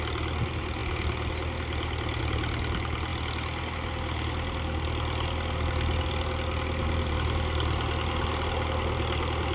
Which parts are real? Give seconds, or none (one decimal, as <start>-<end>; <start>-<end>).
0.0-9.5